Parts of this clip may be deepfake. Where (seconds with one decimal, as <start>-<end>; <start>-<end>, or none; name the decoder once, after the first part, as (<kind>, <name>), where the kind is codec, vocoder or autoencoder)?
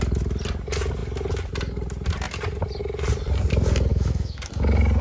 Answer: 3.9-4.5 (autoencoder, DAC-VAE)